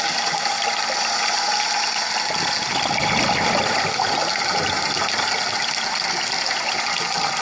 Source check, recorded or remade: recorded